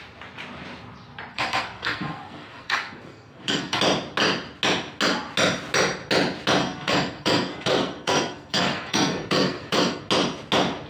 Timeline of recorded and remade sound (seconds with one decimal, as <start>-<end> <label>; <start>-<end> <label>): 0.0-1.3 recorded; 1.3-3.8 remade; 3.8-6.6 recorded; 6.6-10.0 remade; 10.0-10.9 recorded